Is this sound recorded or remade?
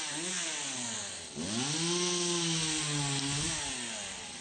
recorded